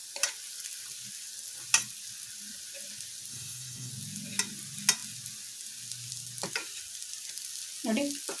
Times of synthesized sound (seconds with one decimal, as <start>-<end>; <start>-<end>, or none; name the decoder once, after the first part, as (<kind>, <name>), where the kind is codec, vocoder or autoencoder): 3.3-3.9 (codec, SNAC)